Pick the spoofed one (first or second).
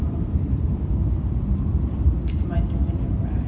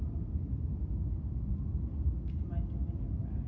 first